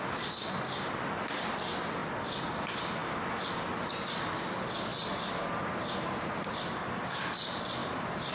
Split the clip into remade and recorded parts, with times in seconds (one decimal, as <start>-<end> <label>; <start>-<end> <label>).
0.0-4.9 recorded; 4.9-6.4 remade; 6.4-7.8 recorded; 7.8-8.3 remade